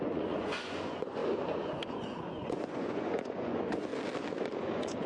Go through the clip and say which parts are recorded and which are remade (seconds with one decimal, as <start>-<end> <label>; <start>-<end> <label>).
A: 0.0-3.9 remade; 3.9-4.6 recorded; 4.6-5.1 remade